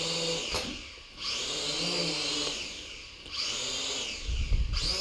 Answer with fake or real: real